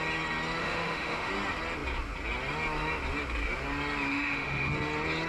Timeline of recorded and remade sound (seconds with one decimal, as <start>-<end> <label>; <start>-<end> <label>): 0.0-0.6 recorded; 0.6-1.3 remade; 1.3-4.1 recorded; 4.1-4.7 remade; 4.7-5.3 recorded